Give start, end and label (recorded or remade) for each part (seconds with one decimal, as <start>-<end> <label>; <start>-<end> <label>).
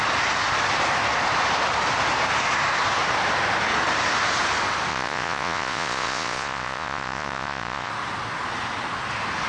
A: 0.0-4.9 recorded; 4.9-7.9 remade; 7.9-9.5 recorded